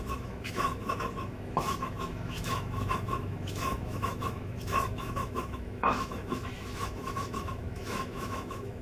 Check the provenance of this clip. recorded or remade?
remade